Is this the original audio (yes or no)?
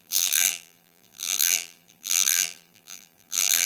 no